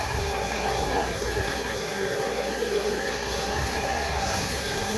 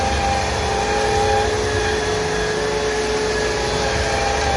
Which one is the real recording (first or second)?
second